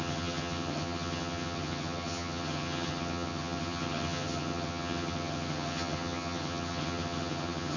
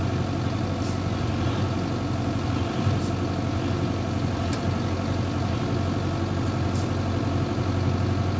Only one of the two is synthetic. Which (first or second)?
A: first